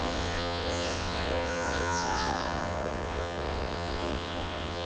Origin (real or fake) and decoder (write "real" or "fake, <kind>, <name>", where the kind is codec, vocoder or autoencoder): fake, vocoder, WaveNeXt